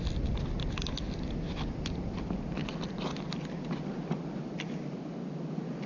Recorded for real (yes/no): yes